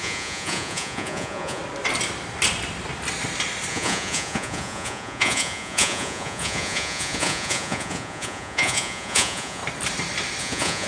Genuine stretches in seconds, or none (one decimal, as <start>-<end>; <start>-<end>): 1.6-3.7; 9.6-10.4